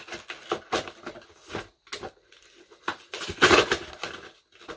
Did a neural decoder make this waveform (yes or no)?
no